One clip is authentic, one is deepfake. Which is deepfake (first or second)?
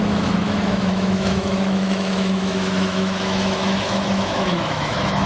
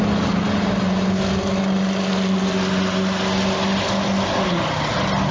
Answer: first